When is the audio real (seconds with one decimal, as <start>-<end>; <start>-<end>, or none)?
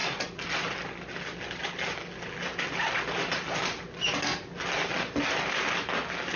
0.0-6.4